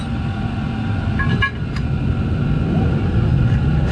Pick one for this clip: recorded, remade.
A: recorded